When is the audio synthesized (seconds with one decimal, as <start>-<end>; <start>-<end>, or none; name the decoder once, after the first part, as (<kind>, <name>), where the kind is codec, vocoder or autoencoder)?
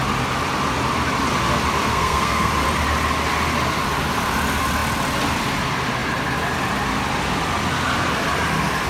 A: 1.9-2.5 (codec, SNAC)